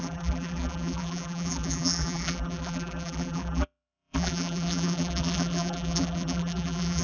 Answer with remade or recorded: remade